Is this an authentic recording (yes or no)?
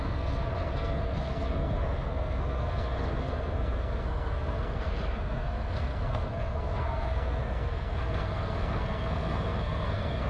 no